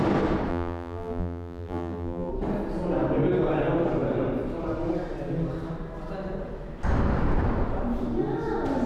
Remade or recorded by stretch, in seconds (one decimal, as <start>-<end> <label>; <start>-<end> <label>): 0.0-0.5 recorded; 0.5-2.3 remade; 2.3-8.9 recorded